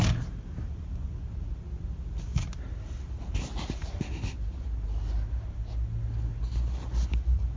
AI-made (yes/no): no